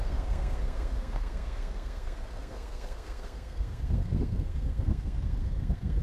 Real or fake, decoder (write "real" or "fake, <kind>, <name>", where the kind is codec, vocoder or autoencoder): fake, codec, SNAC